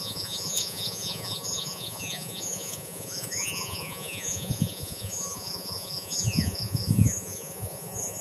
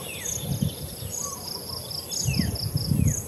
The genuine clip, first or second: second